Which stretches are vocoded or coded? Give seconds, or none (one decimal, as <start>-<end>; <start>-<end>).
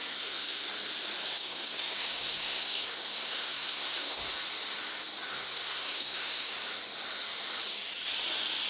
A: 0.0-0.7; 1.4-4.2; 5.3-6.5